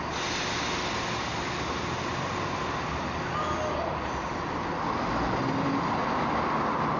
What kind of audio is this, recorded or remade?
recorded